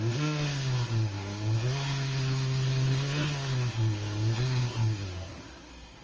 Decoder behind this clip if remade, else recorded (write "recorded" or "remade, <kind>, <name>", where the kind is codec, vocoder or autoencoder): remade, codec, SNAC